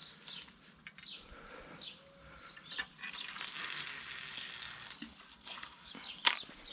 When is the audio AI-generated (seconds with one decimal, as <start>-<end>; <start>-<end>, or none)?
5.3-5.9